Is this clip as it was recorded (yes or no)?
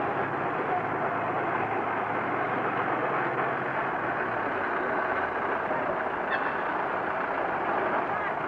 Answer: yes